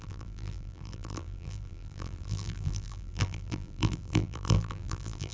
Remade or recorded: remade